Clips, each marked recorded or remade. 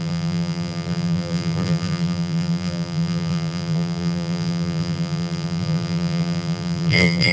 remade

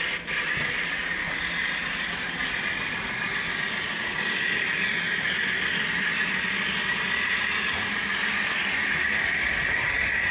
recorded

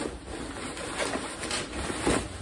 recorded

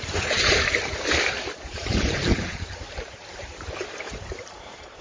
remade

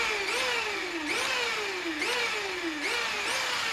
recorded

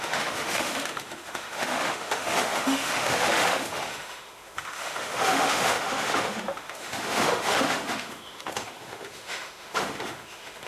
remade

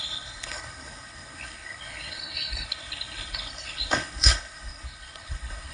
remade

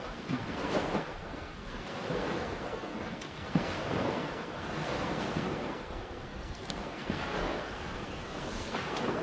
remade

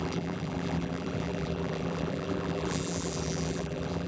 remade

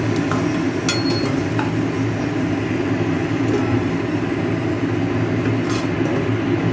recorded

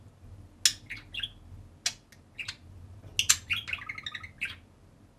recorded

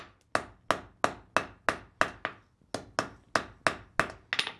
recorded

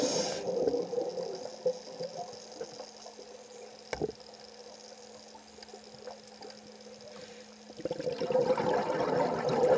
recorded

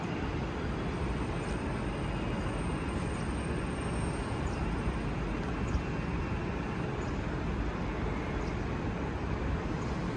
recorded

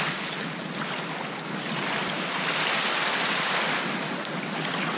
recorded